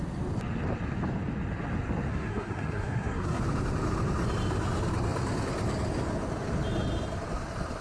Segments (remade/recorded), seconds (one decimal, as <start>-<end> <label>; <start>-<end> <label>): 0.0-2.1 recorded; 2.1-3.4 remade; 3.4-7.8 recorded